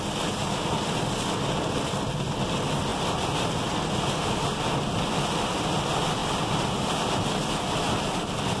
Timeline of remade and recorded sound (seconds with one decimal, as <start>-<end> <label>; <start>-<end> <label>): 0.0-0.4 recorded; 0.4-1.0 remade; 1.0-6.2 recorded; 6.2-8.0 remade; 8.0-8.6 recorded